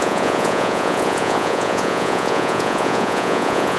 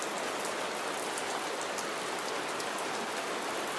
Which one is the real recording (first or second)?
second